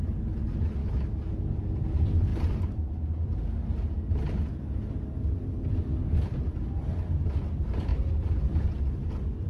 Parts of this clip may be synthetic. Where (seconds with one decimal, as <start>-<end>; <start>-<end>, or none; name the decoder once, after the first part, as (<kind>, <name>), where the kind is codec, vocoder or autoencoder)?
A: 0.8-1.3 (autoencoder, DAC-VAE)